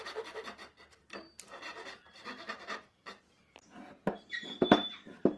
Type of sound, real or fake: fake